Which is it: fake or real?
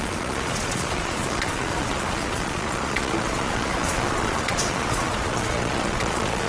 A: fake